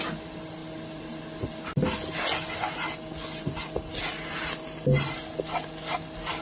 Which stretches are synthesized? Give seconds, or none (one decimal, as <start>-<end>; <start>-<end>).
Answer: 0.6-1.2

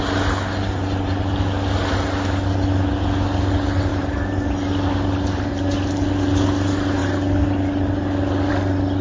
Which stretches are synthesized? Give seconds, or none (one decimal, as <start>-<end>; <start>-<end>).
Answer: none

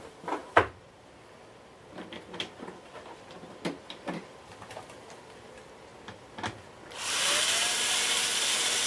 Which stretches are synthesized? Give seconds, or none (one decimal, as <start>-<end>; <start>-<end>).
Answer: 0.0-0.4; 2.2-5.9; 7.6-8.9

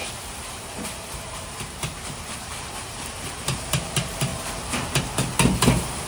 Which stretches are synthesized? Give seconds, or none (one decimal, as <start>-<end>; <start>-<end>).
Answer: 0.5-4.3

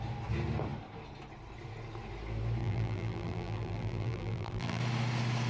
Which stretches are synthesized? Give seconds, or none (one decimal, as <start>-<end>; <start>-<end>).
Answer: 2.6-4.8

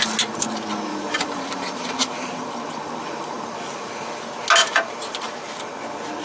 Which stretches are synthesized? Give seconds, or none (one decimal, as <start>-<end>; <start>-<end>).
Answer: 0.9-3.9; 4.6-5.8

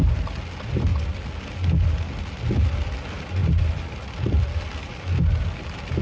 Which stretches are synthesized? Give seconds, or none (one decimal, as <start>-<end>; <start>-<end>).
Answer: none

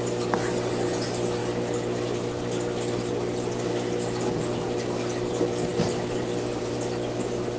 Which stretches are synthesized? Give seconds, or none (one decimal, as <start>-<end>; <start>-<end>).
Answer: 1.4-4.2; 5.7-6.6